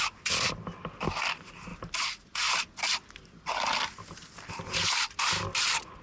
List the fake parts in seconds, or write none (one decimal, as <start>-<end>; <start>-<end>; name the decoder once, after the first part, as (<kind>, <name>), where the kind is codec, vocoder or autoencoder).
none